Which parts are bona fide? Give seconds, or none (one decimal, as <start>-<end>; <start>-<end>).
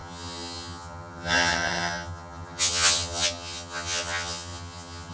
none